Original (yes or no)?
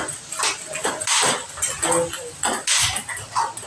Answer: yes